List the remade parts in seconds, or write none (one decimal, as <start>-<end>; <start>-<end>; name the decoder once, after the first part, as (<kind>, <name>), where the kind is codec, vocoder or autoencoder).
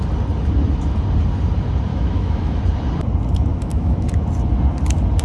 1.9-2.6 (autoencoder, DAC-VAE); 3.5-4.1